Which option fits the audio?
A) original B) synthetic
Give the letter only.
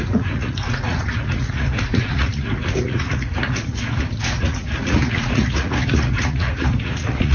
B